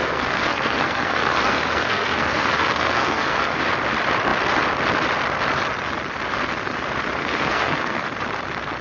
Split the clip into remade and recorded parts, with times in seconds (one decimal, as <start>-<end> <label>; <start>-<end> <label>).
0.0-3.6 remade; 3.6-7.2 recorded; 7.2-8.0 remade; 8.0-8.8 recorded